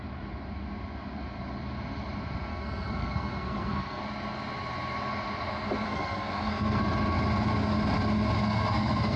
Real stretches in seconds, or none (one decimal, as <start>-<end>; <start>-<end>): 0.0-2.5; 4.0-5.9; 6.8-8.4